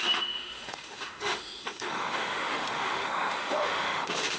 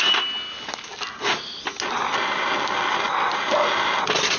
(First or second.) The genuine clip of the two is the second